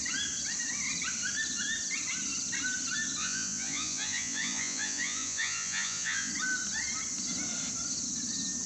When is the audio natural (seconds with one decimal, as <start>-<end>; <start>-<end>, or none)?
0.0-3.2; 6.3-8.7